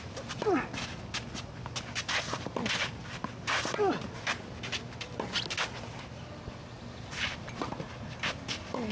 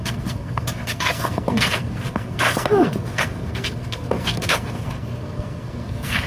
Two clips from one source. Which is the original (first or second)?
first